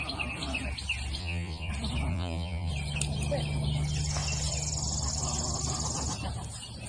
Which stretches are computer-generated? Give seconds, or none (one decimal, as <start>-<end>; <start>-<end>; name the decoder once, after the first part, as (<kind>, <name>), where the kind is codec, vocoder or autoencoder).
1.2-1.7 (vocoder, Vocos); 2.1-2.7